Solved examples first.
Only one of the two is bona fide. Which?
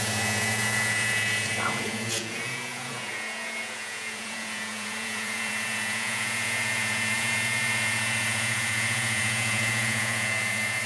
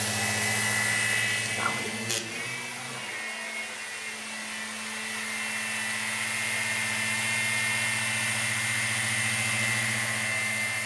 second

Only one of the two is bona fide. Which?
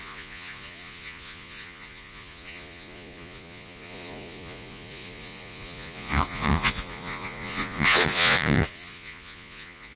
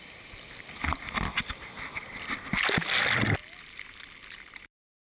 second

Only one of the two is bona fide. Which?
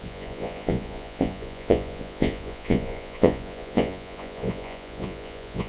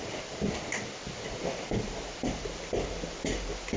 second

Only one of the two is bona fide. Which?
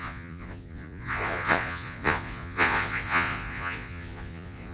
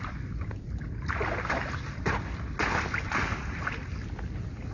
second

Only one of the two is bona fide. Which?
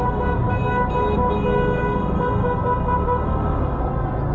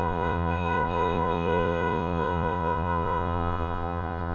first